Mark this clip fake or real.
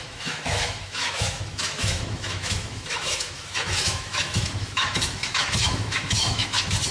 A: fake